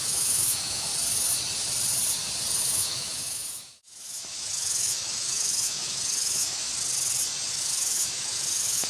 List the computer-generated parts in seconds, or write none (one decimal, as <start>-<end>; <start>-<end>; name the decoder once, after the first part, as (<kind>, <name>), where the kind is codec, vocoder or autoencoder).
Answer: 0.0-0.9 (autoencoder, DAC-VAE); 2.6-6.7; 7.5-8.9